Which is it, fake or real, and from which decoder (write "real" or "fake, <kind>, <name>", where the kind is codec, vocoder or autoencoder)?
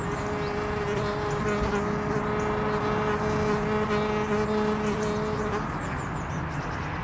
real